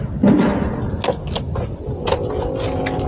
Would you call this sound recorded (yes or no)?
yes